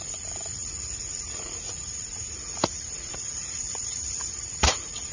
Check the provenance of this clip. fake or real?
fake